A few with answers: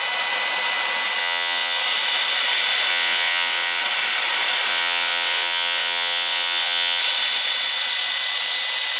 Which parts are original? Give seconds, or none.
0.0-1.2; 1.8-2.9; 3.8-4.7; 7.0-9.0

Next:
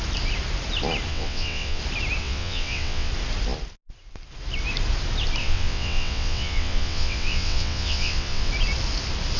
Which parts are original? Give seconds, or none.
0.0-1.1; 1.8-2.2; 3.1-5.4; 8.5-9.4